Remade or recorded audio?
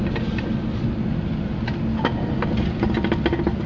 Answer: recorded